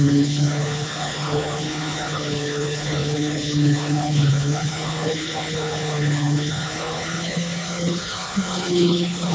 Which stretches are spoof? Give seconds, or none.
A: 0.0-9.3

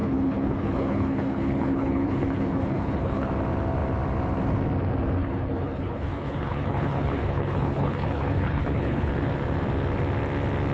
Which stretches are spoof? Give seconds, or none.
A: 0.0-3.3; 5.2-9.1

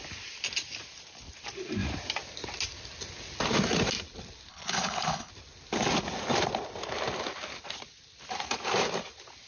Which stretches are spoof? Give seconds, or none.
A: 4.5-5.3

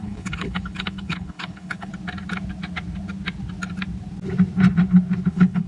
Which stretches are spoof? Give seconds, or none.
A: 0.0-1.9; 5.3-5.7

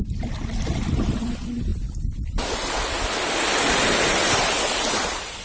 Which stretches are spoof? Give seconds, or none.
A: none